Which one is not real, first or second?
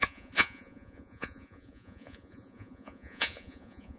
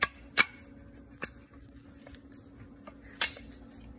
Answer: first